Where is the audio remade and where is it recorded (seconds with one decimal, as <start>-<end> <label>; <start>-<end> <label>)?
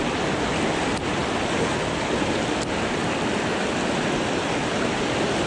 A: 0.0-5.5 recorded